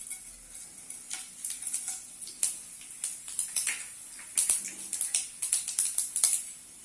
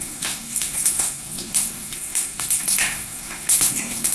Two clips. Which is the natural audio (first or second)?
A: first